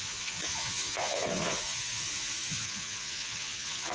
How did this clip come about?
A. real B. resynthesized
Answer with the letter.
B